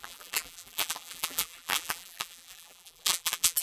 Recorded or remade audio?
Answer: remade